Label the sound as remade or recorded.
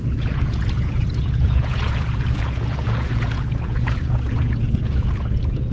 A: remade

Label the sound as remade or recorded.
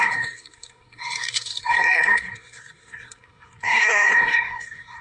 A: remade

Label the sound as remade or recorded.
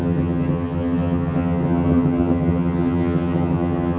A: remade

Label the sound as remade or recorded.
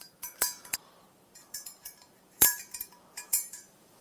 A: remade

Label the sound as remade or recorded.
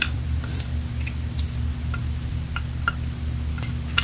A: remade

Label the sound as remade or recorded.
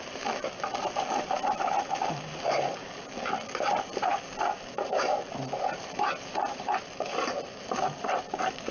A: recorded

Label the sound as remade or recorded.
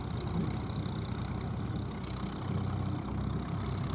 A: recorded